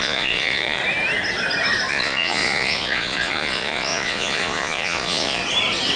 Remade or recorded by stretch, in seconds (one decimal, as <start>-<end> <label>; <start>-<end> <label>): 0.0-0.8 remade; 0.8-1.9 recorded; 1.9-5.4 remade; 5.4-6.0 recorded